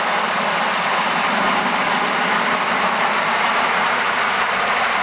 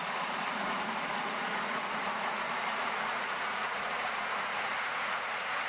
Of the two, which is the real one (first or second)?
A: first